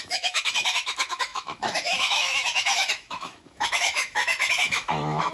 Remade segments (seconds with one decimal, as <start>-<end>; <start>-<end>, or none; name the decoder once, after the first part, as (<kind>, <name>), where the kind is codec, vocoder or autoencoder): 0.0-5.3 (autoencoder, DAC-VAE)